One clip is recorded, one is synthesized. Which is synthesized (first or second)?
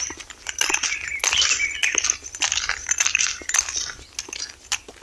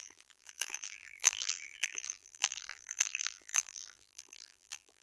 second